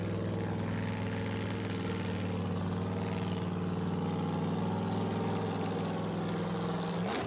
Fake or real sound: real